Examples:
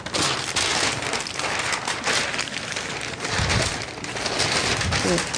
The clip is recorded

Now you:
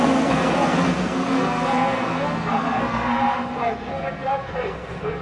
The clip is remade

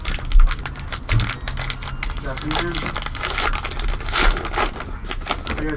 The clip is recorded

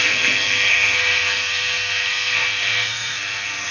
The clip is remade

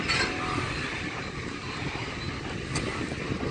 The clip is recorded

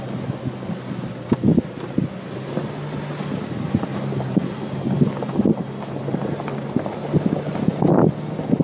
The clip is recorded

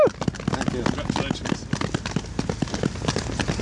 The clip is recorded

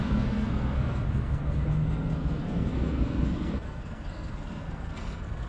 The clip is remade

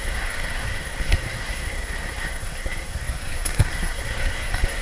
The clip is remade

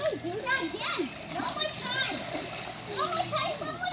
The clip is recorded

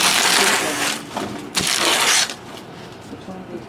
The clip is recorded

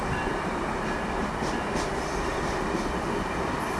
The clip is recorded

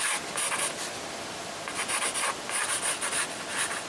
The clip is recorded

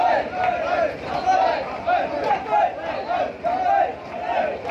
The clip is recorded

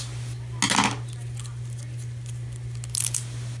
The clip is recorded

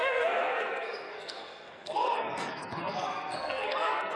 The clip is remade